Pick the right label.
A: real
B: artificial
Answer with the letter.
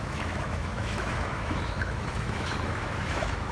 B